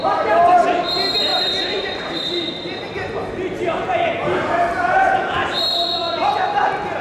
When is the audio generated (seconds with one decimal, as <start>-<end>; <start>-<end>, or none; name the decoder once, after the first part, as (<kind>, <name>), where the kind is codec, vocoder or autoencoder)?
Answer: none